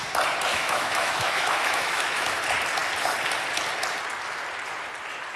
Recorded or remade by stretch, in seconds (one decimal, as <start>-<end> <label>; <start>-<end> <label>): 0.0-0.5 recorded; 0.5-2.4 remade; 2.4-5.4 recorded